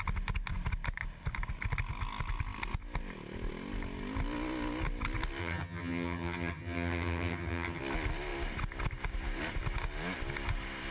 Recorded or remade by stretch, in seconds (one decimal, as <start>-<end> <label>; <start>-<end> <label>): 0.0-5.4 recorded; 5.4-7.8 remade; 7.8-10.9 recorded

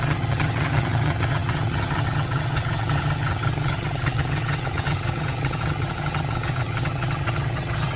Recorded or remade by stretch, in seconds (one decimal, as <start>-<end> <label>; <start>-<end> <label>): 0.0-8.0 remade

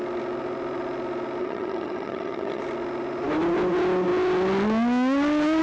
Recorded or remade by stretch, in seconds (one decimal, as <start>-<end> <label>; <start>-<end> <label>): 0.0-1.4 recorded; 1.4-2.6 remade; 2.6-5.6 recorded

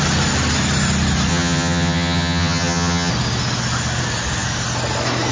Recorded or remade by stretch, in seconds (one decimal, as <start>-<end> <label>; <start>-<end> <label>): 0.0-1.3 recorded; 1.3-3.1 remade; 3.1-5.3 recorded

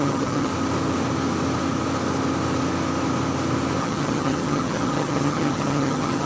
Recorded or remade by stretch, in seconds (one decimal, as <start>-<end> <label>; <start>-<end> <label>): 0.0-0.5 remade; 0.5-3.8 recorded; 3.8-6.3 remade